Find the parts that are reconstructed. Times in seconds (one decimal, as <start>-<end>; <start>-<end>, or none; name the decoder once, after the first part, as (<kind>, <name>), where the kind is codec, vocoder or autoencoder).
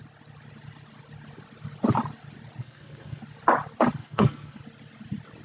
2.6-3.2 (codec, SNAC); 4.0-4.6